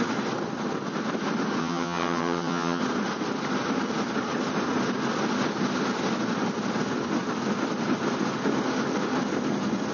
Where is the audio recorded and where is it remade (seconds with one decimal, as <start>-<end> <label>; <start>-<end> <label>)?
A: 0.0-1.6 recorded; 1.6-2.8 remade; 2.8-9.9 recorded